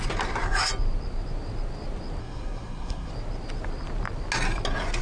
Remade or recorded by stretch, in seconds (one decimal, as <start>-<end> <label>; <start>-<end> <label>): 0.0-2.2 recorded; 2.2-3.1 remade; 3.1-5.0 recorded